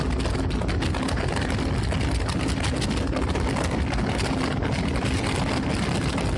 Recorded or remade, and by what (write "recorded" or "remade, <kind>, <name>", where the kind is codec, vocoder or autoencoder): recorded